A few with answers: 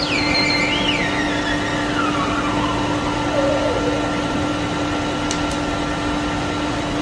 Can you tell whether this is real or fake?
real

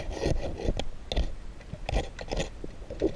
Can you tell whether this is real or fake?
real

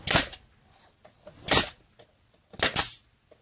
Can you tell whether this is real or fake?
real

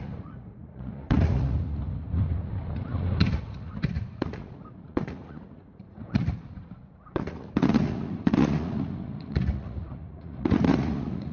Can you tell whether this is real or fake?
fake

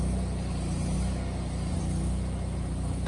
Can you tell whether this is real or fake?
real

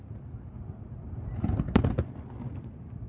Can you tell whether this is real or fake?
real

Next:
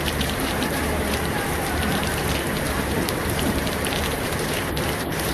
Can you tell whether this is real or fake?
fake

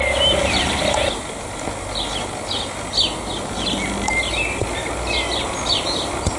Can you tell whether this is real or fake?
real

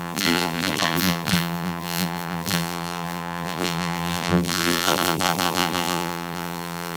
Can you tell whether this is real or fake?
fake